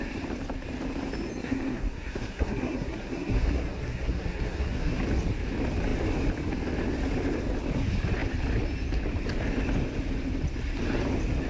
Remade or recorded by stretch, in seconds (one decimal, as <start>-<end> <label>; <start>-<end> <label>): 0.0-1.4 recorded; 1.4-5.0 remade; 5.0-11.5 recorded